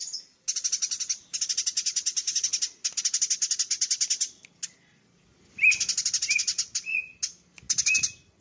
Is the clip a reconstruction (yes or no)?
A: no